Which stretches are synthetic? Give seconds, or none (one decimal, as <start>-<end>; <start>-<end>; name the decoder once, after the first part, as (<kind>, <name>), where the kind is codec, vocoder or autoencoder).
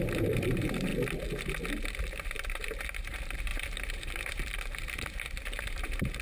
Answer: 0.0-0.9 (vocoder, BigVGAN v2); 2.0-6.2